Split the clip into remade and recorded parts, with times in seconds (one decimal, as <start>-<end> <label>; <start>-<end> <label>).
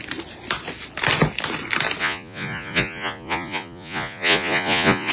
0.0-2.0 recorded; 2.0-5.1 remade